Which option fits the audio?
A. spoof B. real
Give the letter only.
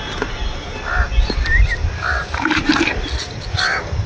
B